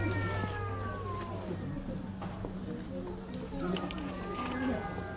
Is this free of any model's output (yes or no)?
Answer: yes